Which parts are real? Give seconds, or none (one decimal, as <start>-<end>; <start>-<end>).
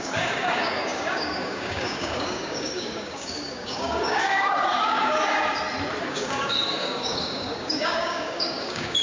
5.4-6.0